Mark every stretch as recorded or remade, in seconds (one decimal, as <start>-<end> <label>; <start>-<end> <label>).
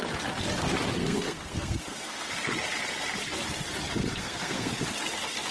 0.0-1.0 recorded; 1.0-2.3 remade; 2.3-4.2 recorded; 4.2-4.7 remade; 4.7-5.5 recorded